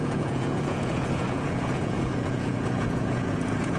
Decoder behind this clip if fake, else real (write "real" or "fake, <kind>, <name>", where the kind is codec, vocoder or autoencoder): fake, vocoder, Vocos